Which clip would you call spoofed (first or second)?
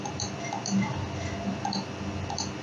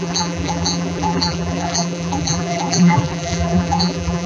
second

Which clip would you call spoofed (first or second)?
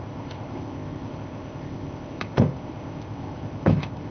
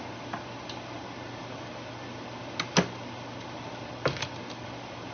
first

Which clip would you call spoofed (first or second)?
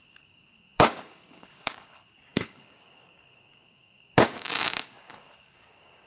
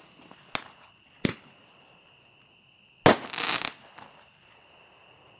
first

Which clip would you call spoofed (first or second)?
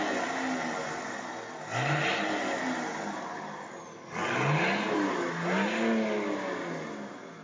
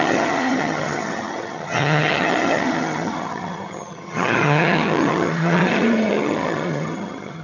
second